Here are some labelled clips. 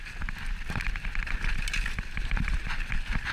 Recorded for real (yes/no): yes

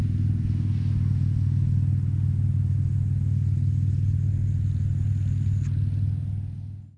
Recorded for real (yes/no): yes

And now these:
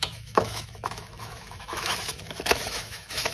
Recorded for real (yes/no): no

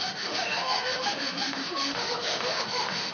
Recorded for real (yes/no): no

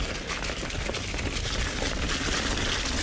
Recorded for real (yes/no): yes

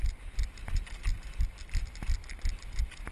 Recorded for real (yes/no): yes